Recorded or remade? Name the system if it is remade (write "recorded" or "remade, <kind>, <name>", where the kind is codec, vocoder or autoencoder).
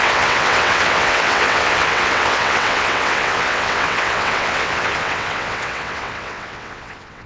remade, vocoder, WaveNeXt